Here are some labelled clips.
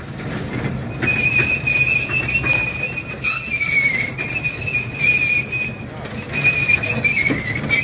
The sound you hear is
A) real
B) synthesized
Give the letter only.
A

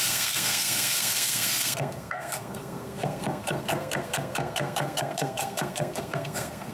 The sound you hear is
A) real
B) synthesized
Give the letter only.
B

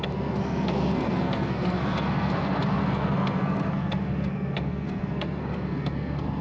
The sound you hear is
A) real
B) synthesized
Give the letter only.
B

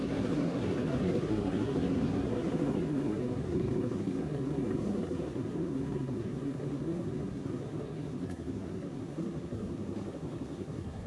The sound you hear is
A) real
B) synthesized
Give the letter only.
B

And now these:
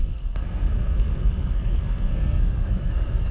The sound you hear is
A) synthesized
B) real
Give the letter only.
A